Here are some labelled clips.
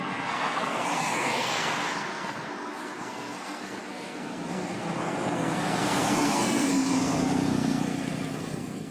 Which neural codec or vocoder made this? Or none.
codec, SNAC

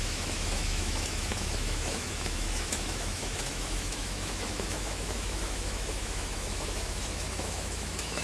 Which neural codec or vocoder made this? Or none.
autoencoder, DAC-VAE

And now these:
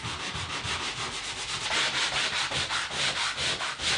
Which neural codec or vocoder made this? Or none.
vocoder, BigVGAN v2